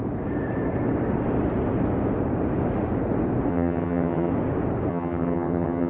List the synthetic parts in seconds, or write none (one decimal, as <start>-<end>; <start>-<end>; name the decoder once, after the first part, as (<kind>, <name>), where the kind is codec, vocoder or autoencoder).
3.5-4.3 (vocoder, HiFi-GAN); 4.9-5.9